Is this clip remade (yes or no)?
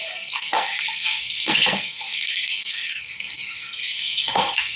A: yes